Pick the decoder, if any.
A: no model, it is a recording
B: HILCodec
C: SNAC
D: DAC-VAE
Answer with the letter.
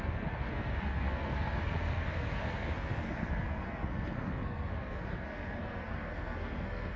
C